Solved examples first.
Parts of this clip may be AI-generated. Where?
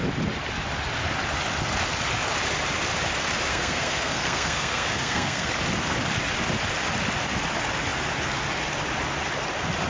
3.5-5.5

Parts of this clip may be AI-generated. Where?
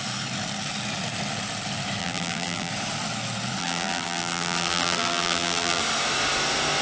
2.0-2.7; 3.6-5.8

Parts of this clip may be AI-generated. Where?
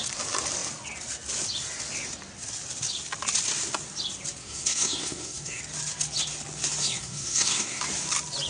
4.4-5.6; 6.8-7.8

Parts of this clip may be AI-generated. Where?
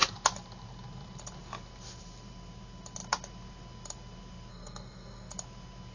4.5-5.3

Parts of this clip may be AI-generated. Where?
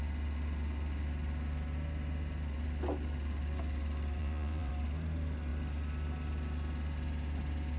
4.2-4.7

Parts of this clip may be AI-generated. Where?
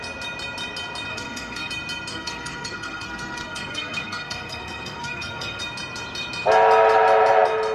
1.1-1.7; 2.1-5.6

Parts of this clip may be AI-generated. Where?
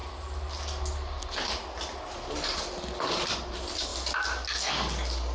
none